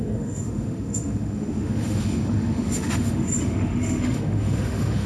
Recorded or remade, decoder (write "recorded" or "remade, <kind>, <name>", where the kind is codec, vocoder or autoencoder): remade, autoencoder, DAC-VAE